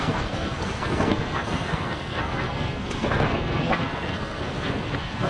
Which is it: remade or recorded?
remade